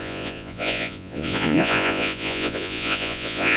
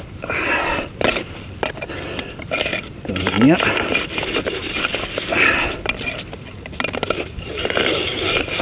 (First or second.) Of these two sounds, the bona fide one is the second